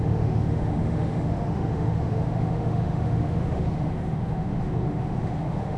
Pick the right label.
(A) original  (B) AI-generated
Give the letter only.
B